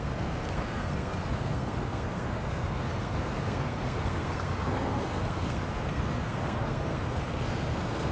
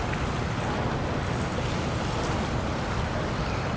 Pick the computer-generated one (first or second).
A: first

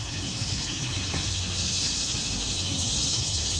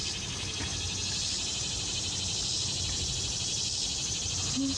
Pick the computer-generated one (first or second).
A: first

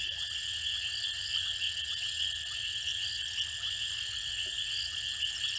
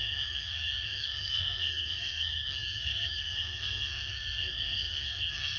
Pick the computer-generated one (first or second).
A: second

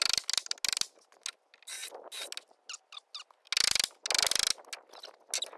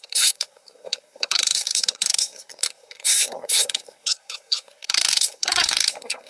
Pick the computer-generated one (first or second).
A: second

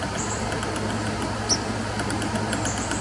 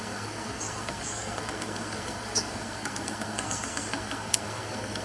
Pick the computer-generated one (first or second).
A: second